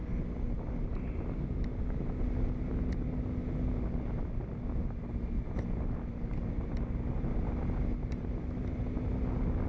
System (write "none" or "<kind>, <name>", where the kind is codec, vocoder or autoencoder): none